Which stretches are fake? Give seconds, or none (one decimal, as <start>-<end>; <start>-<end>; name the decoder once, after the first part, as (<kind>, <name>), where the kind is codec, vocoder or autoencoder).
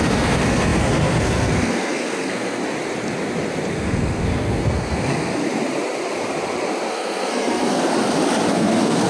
0.0-2.6 (codec, SNAC); 3.7-5.4; 6.9-7.9; 8.5-9.1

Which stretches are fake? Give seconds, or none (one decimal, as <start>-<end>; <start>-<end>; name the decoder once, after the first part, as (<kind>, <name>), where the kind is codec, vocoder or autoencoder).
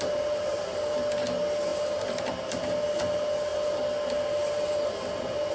0.0-3.5 (vocoder, BigVGAN v2)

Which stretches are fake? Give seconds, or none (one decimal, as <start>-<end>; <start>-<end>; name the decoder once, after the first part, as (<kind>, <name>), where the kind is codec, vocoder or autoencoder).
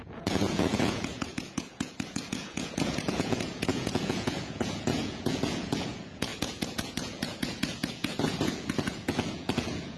0.0-10.0 (vocoder, Vocos)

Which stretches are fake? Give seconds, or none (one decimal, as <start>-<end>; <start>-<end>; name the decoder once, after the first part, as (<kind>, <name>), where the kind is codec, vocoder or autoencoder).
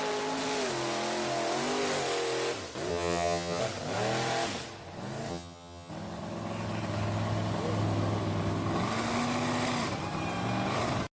2.9-3.6 (vocoder, HiFi-GAN); 5.3-5.9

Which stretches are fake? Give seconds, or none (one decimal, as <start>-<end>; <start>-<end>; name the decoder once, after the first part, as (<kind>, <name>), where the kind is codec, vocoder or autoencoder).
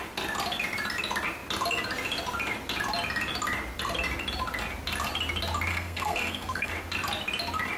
5.7-6.7 (codec, SNAC)